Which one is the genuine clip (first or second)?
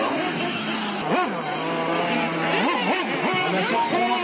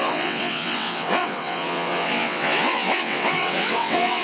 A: first